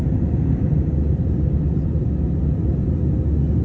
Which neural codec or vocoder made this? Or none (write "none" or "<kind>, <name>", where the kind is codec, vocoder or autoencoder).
none